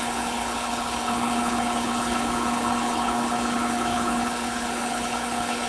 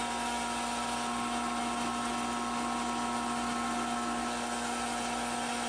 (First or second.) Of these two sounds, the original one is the second